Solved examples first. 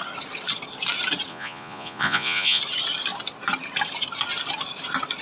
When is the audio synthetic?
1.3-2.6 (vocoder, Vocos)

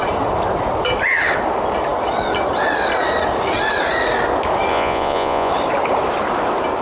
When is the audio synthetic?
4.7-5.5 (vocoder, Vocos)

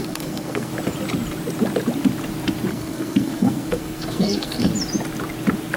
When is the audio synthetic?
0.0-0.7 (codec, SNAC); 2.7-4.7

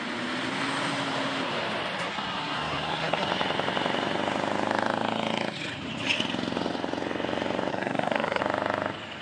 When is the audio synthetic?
2.0-3.3 (codec, SNAC); 7.7-8.4

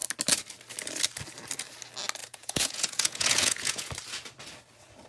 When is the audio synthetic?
2.2-3.9 (vocoder, Vocos)

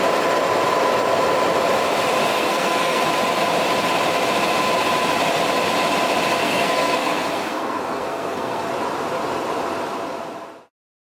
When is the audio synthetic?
2.3-3.0 (codec, SNAC); 6.4-8.7

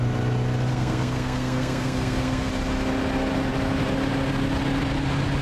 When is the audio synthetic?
0.7-2.5 (codec, SNAC)

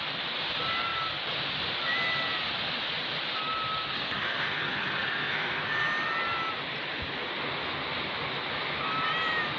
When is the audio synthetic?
3.9-5.6 (codec, SNAC)